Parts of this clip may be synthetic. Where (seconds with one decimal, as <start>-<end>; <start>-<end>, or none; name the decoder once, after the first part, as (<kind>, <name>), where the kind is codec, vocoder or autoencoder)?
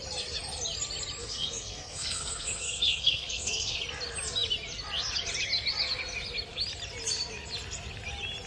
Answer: 1.2-3.8 (codec, SNAC)